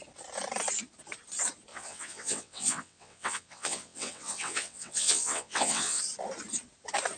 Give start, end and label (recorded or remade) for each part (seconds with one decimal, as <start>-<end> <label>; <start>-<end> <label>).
0.0-1.7 recorded; 1.7-6.0 remade; 6.0-7.2 recorded